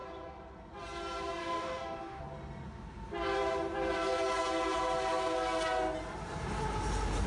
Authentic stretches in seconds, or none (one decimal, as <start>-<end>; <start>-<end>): 0.0-1.4; 2.2-7.3